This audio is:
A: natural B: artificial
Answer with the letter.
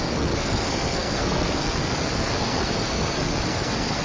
B